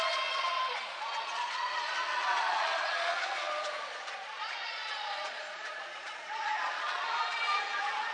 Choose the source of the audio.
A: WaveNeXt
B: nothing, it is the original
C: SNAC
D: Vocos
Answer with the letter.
D